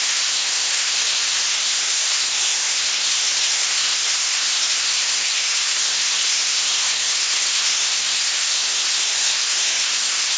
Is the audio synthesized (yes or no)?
yes